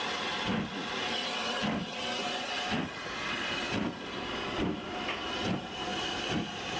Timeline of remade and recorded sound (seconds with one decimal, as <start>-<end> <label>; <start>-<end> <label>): 0.0-6.8 recorded